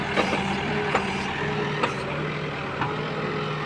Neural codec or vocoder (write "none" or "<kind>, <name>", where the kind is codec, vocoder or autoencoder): none